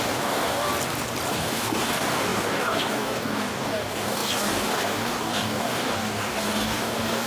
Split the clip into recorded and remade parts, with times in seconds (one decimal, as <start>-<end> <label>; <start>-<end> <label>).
0.0-0.7 remade; 0.7-1.3 recorded; 1.3-7.3 remade